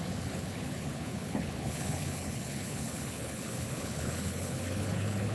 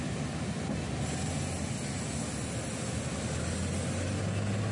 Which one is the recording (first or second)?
second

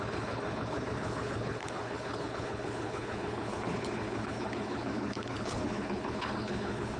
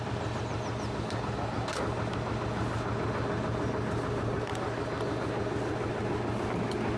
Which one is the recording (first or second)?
second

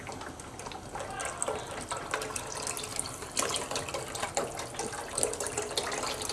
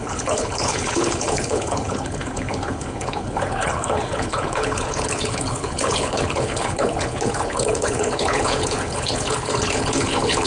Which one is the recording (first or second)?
first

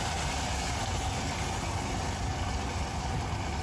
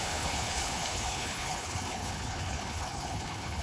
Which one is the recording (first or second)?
first